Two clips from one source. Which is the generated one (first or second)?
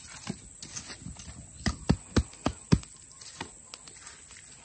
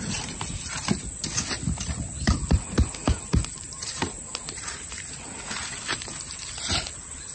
second